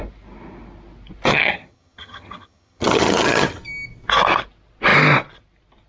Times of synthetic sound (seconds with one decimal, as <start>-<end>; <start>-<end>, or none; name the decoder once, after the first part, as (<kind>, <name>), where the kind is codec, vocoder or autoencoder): 1.3-3.6 (vocoder, HiFi-GAN)